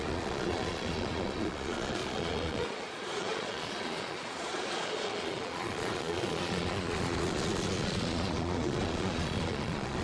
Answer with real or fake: fake